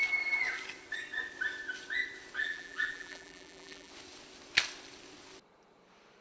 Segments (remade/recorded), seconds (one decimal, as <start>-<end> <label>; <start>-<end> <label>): 0.0-2.4 recorded; 2.4-3.9 remade; 3.9-6.2 recorded